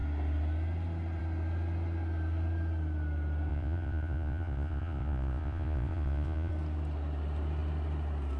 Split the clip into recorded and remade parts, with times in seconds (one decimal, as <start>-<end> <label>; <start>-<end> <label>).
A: 0.0-3.5 recorded; 3.5-6.5 remade; 6.5-8.4 recorded